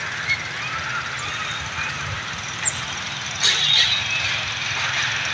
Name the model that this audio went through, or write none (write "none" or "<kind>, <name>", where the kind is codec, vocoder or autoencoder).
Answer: none